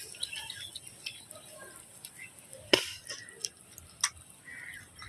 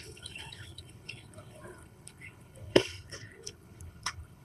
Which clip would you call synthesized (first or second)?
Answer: second